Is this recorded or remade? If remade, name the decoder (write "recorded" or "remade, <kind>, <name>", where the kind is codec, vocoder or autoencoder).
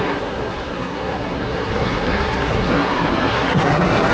remade, codec, SNAC